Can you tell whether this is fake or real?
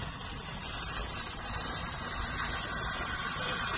real